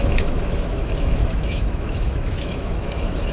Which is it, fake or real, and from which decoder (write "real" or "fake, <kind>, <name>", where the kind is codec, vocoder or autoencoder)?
fake, autoencoder, DAC-VAE